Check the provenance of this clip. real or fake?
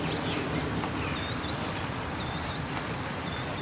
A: fake